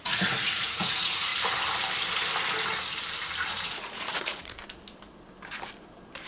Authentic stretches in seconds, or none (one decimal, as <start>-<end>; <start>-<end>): 1.3-3.5; 4.6-6.3